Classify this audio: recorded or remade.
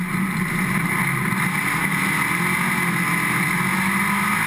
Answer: recorded